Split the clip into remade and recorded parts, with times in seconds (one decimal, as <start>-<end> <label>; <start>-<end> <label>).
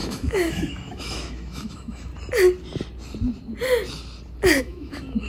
0.0-2.1 remade; 2.1-4.6 recorded; 4.6-5.3 remade